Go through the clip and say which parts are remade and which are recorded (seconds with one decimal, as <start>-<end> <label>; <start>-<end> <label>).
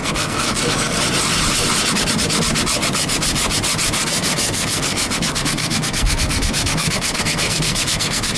0.0-1.0 remade; 1.0-4.0 recorded; 4.0-8.4 remade